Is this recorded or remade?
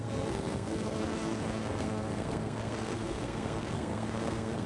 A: remade